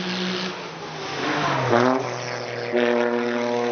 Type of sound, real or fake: real